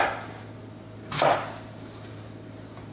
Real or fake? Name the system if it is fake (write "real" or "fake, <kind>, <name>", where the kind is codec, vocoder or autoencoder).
real